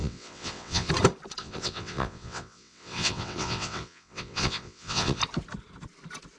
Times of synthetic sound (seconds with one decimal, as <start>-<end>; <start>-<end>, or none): 0.0-0.9; 1.4-5.2